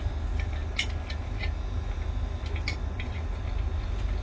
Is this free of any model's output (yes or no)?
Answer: yes